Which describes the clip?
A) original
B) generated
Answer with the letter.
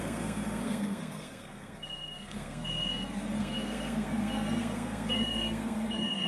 B